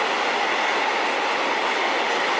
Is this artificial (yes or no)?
no